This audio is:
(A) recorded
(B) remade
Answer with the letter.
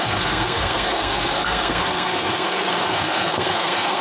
B